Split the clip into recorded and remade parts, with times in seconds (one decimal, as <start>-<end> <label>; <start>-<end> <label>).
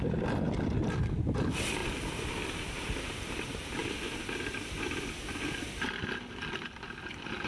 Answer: 0.0-1.8 recorded; 1.8-3.3 remade; 3.3-7.5 recorded